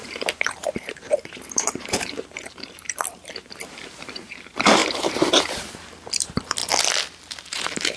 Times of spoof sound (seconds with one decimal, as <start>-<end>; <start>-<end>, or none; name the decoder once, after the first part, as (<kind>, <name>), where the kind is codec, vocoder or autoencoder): 0.0-6.6 (vocoder, BigVGAN v2); 7.4-8.0